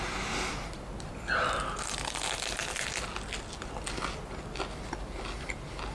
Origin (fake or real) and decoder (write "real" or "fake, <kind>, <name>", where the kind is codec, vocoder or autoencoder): real